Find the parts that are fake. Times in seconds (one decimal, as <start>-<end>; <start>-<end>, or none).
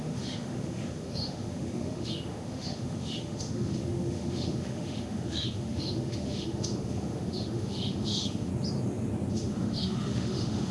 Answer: 0.0-8.5; 9.3-10.7